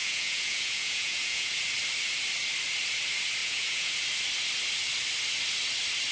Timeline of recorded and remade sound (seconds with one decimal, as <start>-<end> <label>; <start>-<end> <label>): 0.0-1.6 remade; 1.6-3.4 recorded; 3.4-3.9 remade; 3.9-6.1 recorded